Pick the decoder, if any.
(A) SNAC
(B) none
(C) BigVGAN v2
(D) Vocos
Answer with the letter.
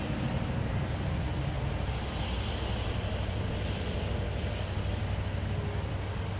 B